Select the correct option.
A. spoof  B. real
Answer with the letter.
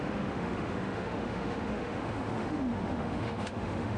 A